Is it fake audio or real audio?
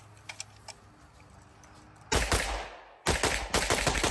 real